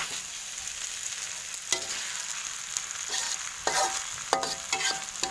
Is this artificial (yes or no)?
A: no